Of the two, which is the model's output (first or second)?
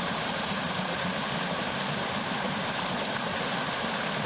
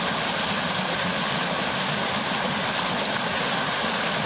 first